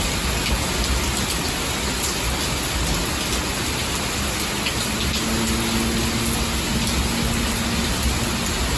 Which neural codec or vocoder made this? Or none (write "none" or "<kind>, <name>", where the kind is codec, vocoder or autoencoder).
none